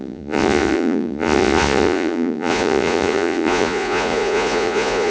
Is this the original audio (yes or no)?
no